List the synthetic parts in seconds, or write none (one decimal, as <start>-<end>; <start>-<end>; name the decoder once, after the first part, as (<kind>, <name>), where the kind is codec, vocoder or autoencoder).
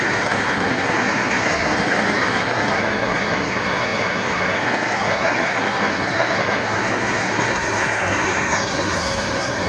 0.0-9.7 (codec, SNAC)